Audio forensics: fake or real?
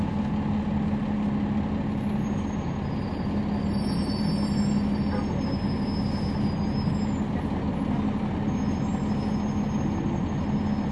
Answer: real